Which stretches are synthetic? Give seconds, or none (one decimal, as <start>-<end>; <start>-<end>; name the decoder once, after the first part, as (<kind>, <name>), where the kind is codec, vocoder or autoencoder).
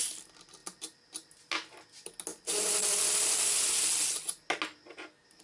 0.6-1.3 (vocoder, BigVGAN v2); 2.3-3.6